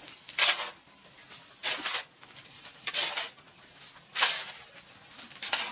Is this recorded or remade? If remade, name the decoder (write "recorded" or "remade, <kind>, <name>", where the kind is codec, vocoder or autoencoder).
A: recorded